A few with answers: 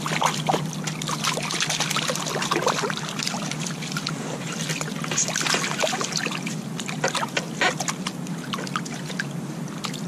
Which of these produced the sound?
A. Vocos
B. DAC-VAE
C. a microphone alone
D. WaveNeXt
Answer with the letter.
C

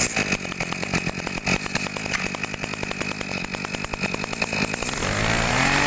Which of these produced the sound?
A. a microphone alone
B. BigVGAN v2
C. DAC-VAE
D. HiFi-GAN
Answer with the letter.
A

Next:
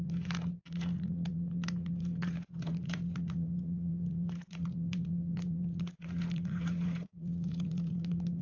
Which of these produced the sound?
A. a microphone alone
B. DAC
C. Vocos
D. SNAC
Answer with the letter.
C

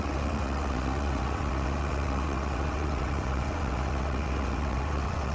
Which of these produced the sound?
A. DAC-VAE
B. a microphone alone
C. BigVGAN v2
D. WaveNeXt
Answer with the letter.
D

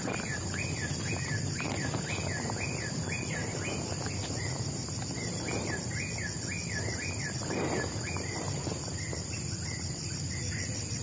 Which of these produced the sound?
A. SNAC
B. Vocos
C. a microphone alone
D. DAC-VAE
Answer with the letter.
C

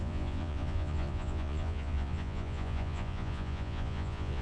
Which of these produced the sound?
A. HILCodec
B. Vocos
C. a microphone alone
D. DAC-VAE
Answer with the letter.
B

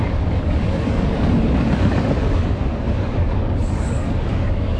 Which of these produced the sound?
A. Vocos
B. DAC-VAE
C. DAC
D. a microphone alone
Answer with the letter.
C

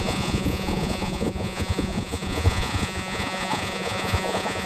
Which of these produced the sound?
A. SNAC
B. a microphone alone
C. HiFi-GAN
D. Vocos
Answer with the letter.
D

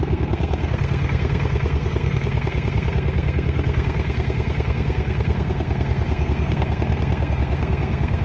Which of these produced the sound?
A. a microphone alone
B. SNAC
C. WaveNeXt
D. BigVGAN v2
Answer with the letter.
B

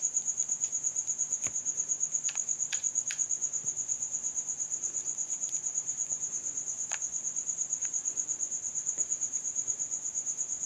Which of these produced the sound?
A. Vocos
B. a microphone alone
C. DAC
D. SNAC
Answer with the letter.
A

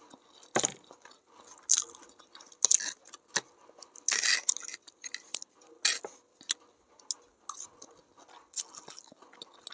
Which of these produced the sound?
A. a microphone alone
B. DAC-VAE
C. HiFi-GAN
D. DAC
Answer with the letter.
A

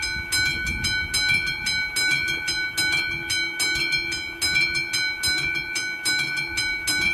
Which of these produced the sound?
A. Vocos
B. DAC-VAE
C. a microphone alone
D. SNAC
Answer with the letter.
C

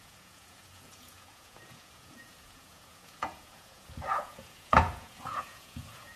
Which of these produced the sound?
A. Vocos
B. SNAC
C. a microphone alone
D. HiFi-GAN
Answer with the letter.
A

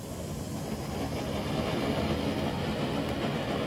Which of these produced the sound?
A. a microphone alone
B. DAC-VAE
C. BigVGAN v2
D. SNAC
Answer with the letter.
A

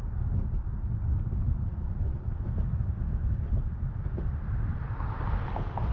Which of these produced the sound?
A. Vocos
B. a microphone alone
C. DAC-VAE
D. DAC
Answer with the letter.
B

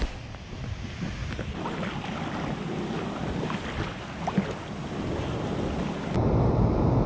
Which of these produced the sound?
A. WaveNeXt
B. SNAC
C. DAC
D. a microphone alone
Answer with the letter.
D